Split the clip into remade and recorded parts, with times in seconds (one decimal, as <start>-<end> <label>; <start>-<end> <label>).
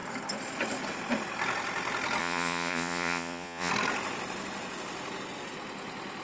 0.0-2.2 recorded; 2.2-3.7 remade; 3.7-6.2 recorded